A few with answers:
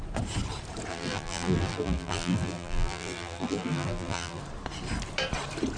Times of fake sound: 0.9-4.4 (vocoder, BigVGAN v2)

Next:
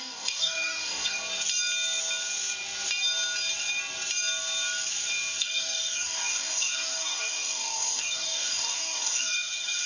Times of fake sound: 0.0-1.2 (codec, DAC); 5.4-9.9

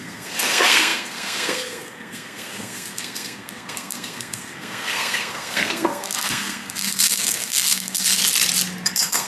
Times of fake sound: 0.0-8.2 (codec, SNAC); 8.9-9.3